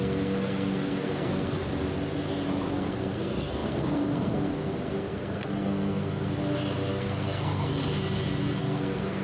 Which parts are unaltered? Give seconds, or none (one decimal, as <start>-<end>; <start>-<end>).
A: 1.6-2.7; 6.4-6.9; 7.8-8.6